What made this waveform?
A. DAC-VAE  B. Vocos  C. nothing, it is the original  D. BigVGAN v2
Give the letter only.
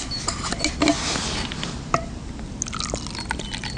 C